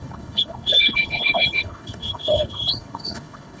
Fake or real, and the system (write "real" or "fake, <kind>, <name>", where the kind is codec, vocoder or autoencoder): fake, codec, HILCodec